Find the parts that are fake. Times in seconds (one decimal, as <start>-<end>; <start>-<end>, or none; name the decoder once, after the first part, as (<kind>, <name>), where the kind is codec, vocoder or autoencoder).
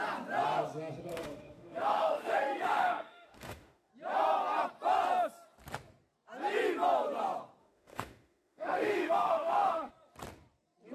1.1-3.9 (autoencoder, DAC-VAE); 7.6-9.9